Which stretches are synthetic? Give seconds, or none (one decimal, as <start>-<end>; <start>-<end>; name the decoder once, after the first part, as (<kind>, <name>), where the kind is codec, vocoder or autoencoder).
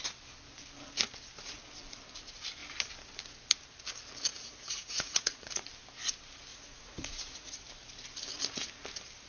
4.3-5.7 (vocoder, Vocos); 6.5-7.7